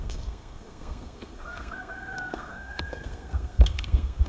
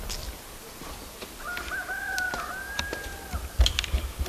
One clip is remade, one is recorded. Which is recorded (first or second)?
second